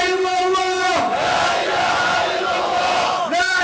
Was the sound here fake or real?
fake